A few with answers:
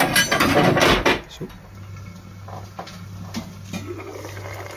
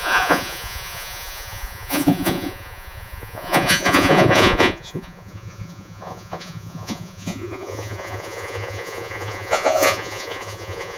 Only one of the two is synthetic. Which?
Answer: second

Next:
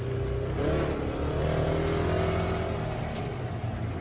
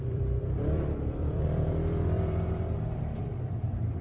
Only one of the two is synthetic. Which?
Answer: second